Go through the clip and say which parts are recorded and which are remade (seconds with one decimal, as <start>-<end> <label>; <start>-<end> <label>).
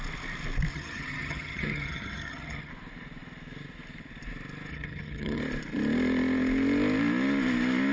0.0-0.7 recorded; 0.7-2.7 remade; 2.7-4.7 recorded; 4.7-5.4 remade; 5.4-7.9 recorded